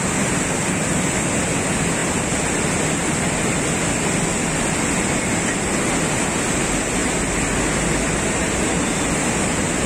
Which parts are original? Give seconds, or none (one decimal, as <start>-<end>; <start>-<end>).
0.0-9.9